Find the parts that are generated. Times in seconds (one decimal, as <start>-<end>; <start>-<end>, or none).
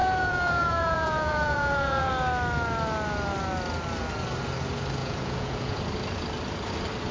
0.0-2.1; 5.0-5.8